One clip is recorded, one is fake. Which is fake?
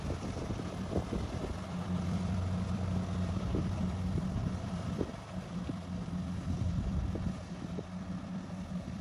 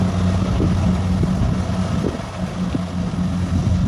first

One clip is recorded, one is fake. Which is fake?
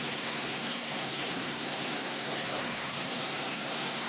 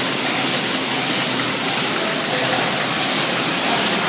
first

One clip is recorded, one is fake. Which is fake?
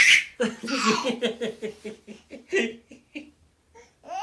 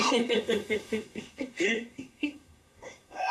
second